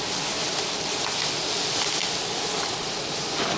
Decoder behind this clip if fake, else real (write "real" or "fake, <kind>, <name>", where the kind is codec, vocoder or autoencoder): real